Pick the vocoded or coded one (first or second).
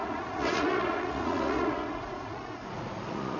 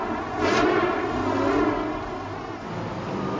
first